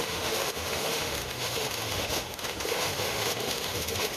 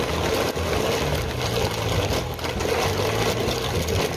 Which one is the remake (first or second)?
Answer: first